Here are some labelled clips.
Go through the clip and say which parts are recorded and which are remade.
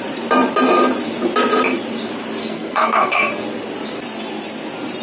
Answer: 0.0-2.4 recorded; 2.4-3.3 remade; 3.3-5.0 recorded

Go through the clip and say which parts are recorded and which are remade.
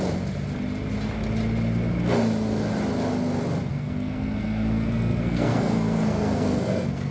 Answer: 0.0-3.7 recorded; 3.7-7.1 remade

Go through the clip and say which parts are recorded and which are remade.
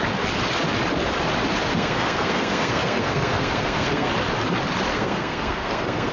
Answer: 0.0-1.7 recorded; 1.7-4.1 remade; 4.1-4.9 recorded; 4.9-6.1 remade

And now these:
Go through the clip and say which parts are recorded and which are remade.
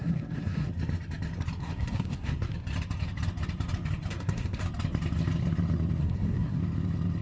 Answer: 0.0-0.7 remade; 0.7-1.6 recorded; 1.6-2.5 remade; 2.5-4.1 recorded; 4.1-4.6 remade; 4.6-6.0 recorded; 6.0-6.6 remade; 6.6-7.2 recorded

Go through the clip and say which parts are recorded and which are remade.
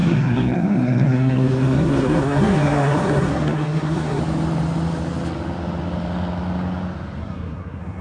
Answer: 0.0-4.2 remade; 4.2-7.2 recorded; 7.2-8.0 remade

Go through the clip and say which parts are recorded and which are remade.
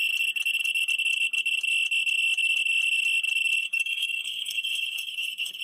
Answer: 0.0-3.6 recorded; 3.6-5.6 remade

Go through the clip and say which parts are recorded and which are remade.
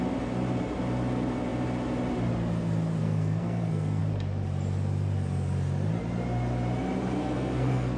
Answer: 0.0-3.0 recorded; 3.0-4.0 remade; 4.0-7.2 recorded; 7.2-8.0 remade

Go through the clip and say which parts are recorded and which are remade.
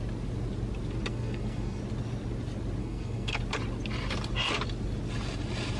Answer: 0.0-1.1 recorded; 1.1-1.8 remade; 1.8-2.8 recorded; 2.8-3.4 remade; 3.4-5.8 recorded